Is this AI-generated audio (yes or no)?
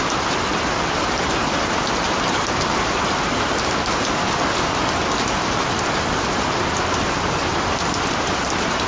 no